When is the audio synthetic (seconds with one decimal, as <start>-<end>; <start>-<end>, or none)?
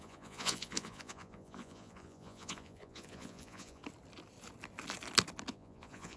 0.0-3.8; 5.5-6.2